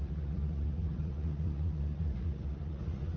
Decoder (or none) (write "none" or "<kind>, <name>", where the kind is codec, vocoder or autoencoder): vocoder, Vocos